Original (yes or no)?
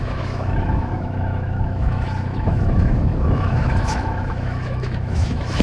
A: no